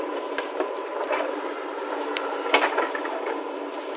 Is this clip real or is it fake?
fake